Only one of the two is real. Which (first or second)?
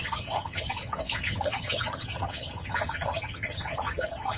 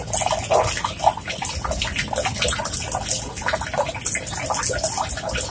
second